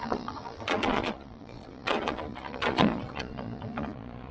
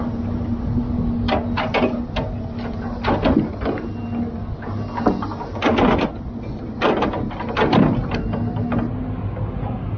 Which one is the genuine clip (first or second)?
second